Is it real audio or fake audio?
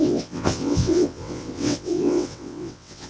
fake